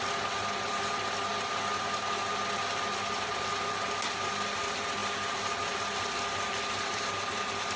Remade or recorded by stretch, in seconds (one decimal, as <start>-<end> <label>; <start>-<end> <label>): 0.0-7.8 recorded